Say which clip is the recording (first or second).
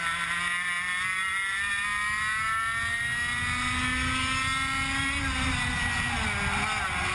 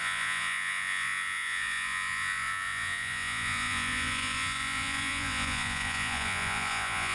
first